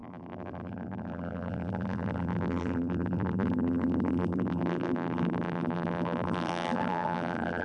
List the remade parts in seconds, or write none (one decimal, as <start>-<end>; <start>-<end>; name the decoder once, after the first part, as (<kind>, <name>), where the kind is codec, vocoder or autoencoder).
0.0-7.6 (vocoder, BigVGAN v2)